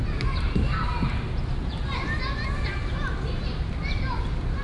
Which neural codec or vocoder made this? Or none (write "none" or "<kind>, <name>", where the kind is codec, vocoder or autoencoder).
none